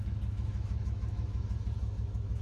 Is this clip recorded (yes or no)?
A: no